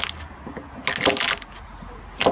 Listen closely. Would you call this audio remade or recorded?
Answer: recorded